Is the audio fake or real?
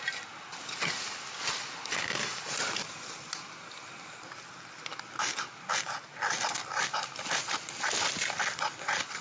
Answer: real